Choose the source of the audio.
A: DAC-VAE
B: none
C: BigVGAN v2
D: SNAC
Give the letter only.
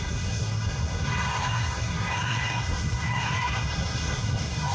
D